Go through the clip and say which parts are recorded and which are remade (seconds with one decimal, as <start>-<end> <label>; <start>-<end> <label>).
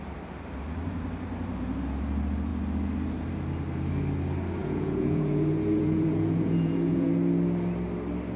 0.0-4.6 recorded; 4.6-7.1 remade; 7.1-8.4 recorded